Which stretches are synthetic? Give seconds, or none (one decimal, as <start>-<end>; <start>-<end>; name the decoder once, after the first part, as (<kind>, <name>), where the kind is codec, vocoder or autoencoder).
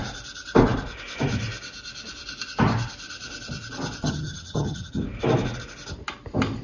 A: 4.0-5.0 (vocoder, HiFi-GAN)